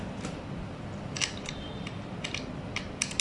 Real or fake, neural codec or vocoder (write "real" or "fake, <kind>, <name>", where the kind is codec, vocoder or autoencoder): real